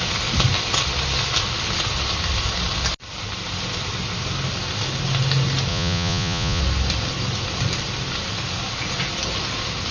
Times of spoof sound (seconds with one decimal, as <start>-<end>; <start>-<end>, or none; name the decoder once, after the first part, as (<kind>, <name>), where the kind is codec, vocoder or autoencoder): 5.7-6.6 (vocoder, Vocos)